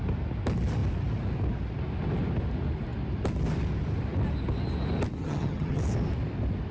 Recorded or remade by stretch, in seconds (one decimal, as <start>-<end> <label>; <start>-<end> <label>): 0.0-5.2 recorded; 5.2-5.8 remade; 5.8-6.7 recorded